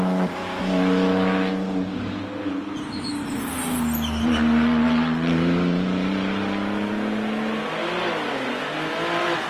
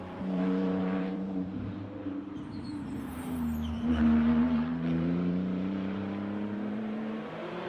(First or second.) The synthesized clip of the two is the second